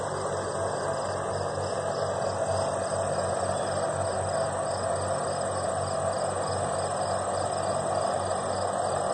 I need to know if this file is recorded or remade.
recorded